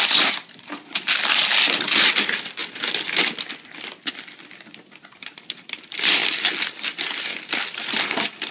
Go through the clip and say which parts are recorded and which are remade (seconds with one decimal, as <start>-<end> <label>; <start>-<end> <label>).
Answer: 0.0-2.6 remade; 2.6-4.1 recorded; 4.1-6.2 remade; 6.2-7.5 recorded; 7.5-8.5 remade